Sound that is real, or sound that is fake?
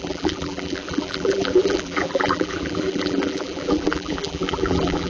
fake